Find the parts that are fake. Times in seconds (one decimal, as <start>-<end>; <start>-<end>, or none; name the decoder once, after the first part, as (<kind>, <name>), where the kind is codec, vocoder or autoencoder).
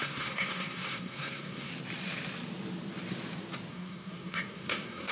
0.0-1.7 (codec, SNAC); 3.7-5.1